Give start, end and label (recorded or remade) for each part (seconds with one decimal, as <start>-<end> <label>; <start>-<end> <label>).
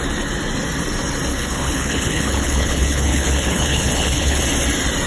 0.0-1.3 recorded; 1.3-4.4 remade; 4.4-5.1 recorded